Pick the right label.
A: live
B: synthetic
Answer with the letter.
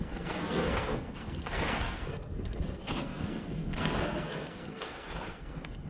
B